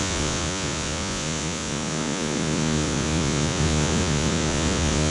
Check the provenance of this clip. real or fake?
fake